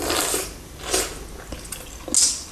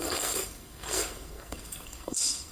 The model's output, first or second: second